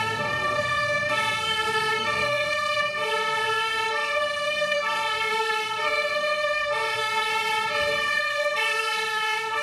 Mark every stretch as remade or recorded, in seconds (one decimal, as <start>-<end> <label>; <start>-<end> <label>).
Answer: 0.0-7.3 remade; 7.3-8.2 recorded; 8.2-9.6 remade